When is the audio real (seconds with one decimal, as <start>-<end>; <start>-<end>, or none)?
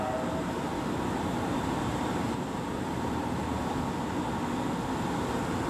0.0-2.1; 3.5-5.7